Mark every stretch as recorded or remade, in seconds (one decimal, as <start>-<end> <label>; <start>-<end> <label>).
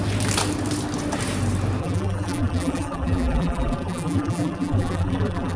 0.0-1.8 recorded; 1.8-5.6 remade